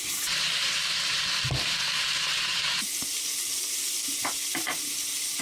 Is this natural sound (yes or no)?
no